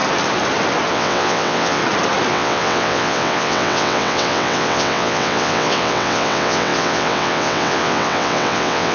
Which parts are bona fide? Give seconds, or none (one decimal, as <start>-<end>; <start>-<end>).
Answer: 0.0-0.9; 1.8-2.3

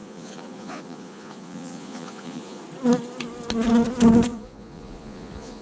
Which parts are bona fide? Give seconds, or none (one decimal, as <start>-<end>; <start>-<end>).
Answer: 2.6-4.3

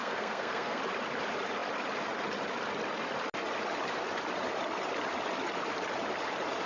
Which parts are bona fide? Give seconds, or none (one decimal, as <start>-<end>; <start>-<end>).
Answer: 0.8-6.7

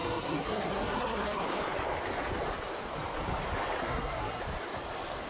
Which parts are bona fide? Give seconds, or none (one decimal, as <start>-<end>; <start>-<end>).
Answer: 1.4-3.8; 4.4-5.3

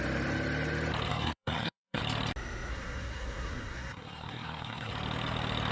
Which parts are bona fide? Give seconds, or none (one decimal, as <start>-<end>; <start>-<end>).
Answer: 0.0-1.1; 2.0-2.7; 4.9-5.7

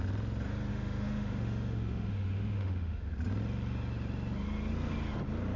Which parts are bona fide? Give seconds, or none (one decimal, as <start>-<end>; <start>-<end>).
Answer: 0.0-0.7; 3.1-5.6

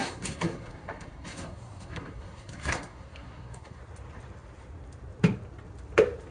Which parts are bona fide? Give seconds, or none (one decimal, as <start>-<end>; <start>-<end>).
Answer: 3.8-6.3

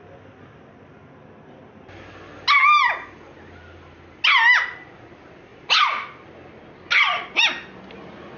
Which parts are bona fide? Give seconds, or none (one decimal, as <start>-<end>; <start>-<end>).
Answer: 0.0-8.4